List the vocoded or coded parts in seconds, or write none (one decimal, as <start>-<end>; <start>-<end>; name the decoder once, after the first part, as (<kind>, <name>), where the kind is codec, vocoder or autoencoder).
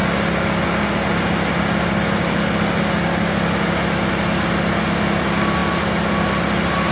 none